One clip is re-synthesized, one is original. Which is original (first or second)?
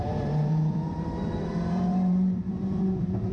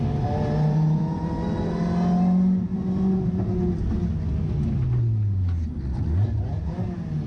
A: second